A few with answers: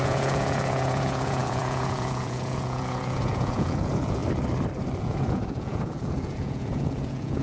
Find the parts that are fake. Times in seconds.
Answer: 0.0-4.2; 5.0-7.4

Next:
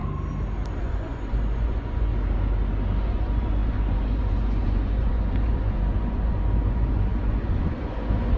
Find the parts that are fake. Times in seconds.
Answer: 0.8-2.1; 3.0-8.4